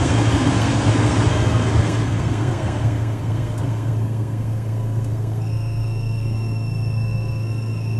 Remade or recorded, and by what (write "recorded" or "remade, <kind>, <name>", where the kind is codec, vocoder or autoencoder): remade, codec, SNAC